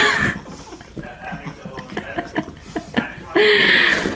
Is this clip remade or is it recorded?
recorded